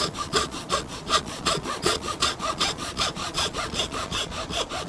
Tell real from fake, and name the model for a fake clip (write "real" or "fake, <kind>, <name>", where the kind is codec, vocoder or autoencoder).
fake, vocoder, Vocos